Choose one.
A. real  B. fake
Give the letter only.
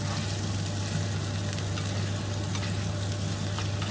A